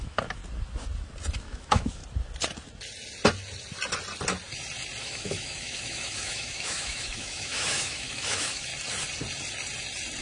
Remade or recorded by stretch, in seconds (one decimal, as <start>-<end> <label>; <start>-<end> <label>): 0.0-0.4 remade; 0.4-1.4 recorded; 1.4-2.0 remade; 2.0-5.0 recorded; 5.0-8.7 remade; 8.7-10.2 recorded